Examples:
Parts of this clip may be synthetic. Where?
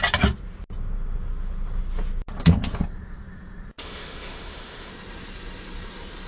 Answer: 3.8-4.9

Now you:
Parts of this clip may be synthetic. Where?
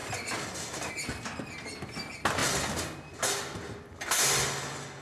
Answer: none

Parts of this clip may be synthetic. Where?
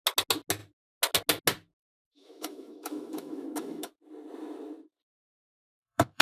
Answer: 1.8-3.9; 5.5-6.2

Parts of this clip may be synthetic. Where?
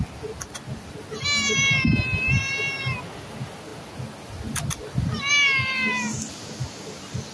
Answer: none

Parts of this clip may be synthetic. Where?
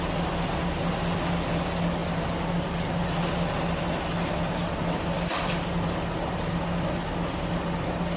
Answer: none